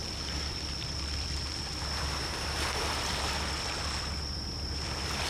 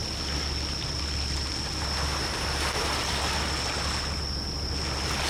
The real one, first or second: second